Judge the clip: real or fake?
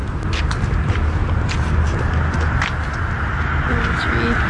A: real